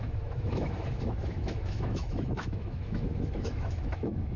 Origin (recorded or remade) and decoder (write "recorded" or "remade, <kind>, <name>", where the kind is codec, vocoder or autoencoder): remade, autoencoder, DAC-VAE